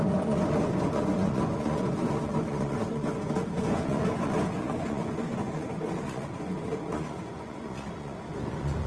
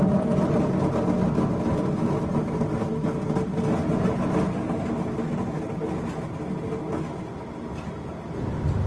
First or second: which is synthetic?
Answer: first